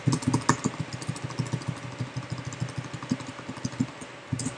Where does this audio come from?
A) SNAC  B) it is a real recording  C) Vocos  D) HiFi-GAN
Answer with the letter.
B